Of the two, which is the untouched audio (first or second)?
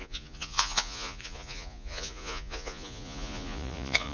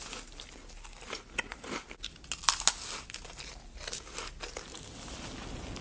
second